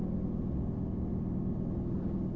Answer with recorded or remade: recorded